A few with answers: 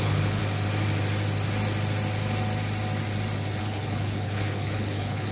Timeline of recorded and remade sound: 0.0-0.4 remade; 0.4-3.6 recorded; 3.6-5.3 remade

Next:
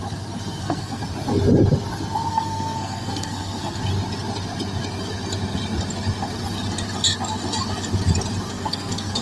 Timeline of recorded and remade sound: 0.0-0.6 recorded; 0.6-1.0 remade; 1.0-2.3 recorded; 2.3-3.8 remade; 3.8-8.5 recorded; 8.5-9.2 remade

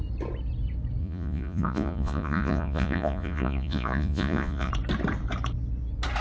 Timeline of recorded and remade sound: 0.0-1.0 recorded; 1.0-4.7 remade; 4.7-6.2 recorded

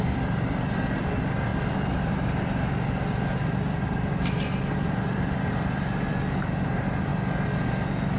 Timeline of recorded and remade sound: 0.0-8.2 recorded

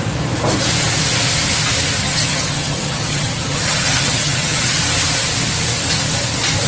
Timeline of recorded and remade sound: 0.0-2.0 recorded; 2.0-4.8 remade; 4.8-6.7 recorded